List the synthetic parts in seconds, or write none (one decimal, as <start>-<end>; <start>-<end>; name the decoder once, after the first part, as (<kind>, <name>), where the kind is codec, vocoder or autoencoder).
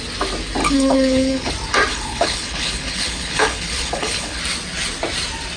0.6-1.5 (codec, HILCodec); 1.9-4.4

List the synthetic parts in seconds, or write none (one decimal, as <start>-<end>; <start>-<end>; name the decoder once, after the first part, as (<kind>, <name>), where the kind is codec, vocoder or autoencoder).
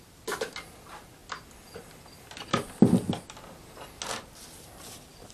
none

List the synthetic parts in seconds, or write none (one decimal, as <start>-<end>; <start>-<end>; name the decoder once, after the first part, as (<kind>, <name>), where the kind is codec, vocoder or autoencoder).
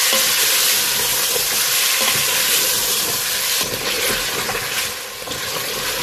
none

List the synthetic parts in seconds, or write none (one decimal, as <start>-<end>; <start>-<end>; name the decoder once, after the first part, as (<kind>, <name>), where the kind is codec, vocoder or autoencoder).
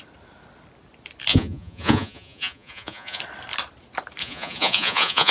1.3-3.2 (vocoder, Vocos); 4.2-5.3